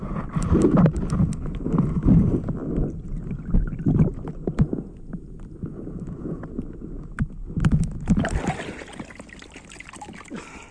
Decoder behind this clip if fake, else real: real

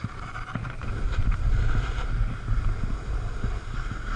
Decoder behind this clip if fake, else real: real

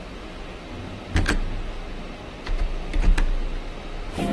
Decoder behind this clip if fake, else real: real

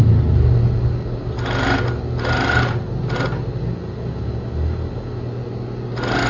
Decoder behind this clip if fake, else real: real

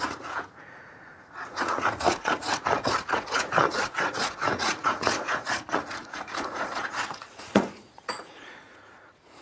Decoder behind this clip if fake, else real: fake, vocoder, Vocos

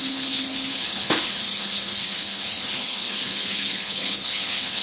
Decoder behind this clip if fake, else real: fake, codec, HILCodec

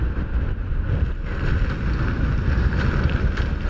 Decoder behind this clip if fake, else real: real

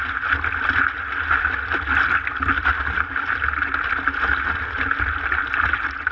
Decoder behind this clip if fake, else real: real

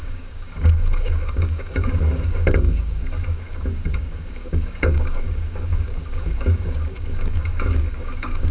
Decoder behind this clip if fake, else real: fake, codec, DAC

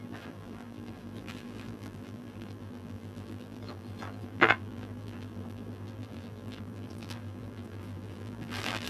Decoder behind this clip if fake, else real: fake, vocoder, BigVGAN v2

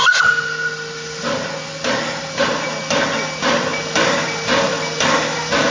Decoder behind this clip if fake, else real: real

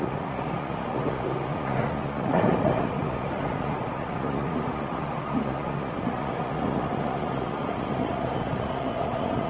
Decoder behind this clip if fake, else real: fake, vocoder, Vocos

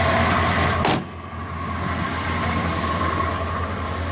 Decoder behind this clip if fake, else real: real